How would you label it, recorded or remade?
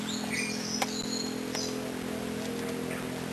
recorded